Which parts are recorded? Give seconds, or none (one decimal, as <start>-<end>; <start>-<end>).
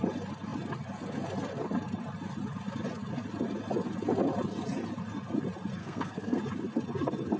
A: 0.0-5.8; 6.4-7.4